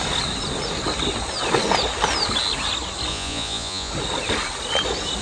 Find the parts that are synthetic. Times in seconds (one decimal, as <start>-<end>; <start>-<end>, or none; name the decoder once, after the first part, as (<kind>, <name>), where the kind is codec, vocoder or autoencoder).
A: 3.1-3.9 (vocoder, Vocos)